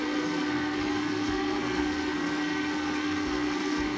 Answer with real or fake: fake